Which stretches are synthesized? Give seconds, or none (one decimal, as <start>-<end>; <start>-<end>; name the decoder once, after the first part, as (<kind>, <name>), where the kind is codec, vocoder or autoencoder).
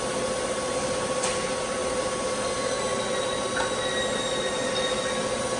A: none